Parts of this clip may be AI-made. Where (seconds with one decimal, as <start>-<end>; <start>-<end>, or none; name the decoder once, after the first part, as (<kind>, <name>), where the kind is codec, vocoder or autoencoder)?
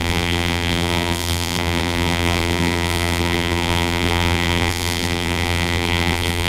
0.0-6.5 (vocoder, BigVGAN v2)